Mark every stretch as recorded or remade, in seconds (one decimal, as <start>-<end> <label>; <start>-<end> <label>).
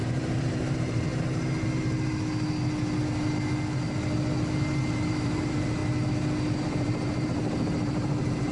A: 0.0-1.1 remade; 1.1-4.9 recorded; 4.9-5.8 remade; 5.8-6.6 recorded; 6.6-8.5 remade